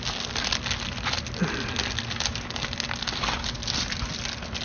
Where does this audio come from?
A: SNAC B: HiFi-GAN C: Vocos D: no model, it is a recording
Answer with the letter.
D